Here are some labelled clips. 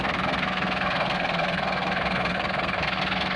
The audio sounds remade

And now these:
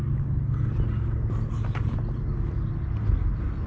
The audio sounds recorded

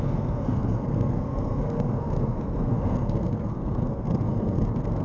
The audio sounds remade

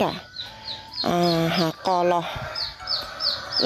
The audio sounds recorded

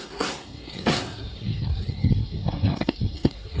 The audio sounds remade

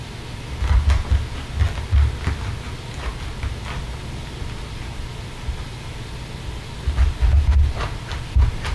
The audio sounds recorded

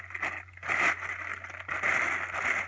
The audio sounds recorded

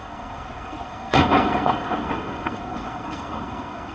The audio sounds remade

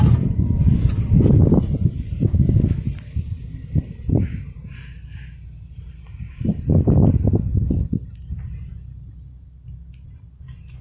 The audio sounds recorded